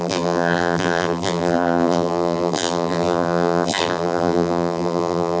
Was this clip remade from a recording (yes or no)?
yes